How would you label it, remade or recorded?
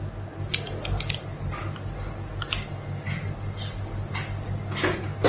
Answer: recorded